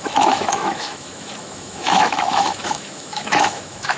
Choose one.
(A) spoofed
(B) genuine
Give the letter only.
A